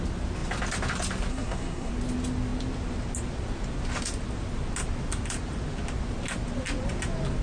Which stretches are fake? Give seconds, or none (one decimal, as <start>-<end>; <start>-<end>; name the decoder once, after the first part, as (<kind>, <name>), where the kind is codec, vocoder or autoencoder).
1.3-1.9 (codec, SNAC)